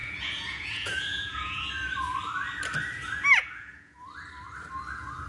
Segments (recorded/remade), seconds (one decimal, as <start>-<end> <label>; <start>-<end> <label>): 0.0-1.6 remade; 1.6-3.4 recorded; 3.4-4.0 remade; 4.0-5.3 recorded